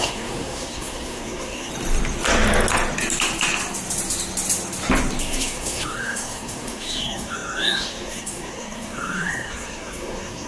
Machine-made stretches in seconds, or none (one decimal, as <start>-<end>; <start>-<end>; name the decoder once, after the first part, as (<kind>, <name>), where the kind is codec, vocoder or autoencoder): 0.0-1.7 (codec, SNAC); 5.2-10.5